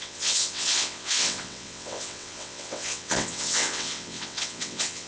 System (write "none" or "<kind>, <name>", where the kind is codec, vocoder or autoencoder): vocoder, WaveNeXt